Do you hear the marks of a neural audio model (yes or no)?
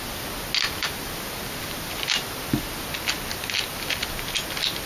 no